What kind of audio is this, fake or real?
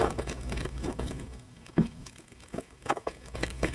fake